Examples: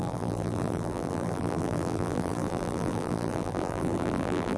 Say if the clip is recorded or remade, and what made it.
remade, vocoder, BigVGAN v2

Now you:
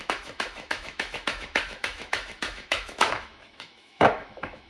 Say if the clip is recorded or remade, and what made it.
remade, autoencoder, DAC-VAE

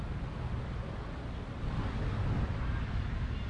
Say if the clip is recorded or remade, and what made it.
recorded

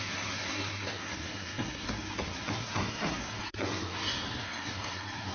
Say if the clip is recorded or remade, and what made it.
remade, codec, SNAC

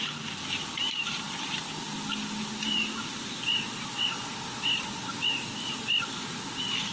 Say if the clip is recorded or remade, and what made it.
recorded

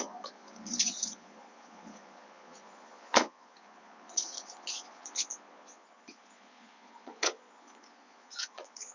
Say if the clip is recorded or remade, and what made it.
remade, vocoder, Vocos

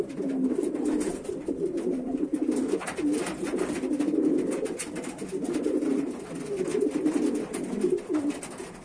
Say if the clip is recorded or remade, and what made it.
recorded